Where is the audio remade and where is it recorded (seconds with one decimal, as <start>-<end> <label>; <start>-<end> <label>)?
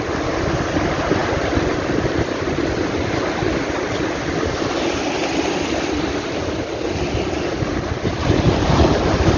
0.0-9.4 recorded